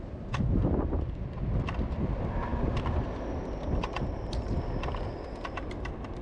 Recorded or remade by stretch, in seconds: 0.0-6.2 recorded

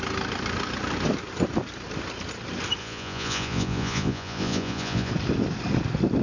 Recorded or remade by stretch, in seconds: 0.0-2.8 recorded; 2.8-5.1 remade; 5.1-6.2 recorded